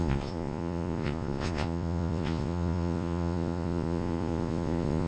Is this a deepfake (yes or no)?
yes